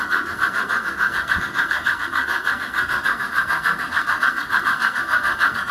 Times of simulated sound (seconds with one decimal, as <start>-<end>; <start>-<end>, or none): 0.0-5.7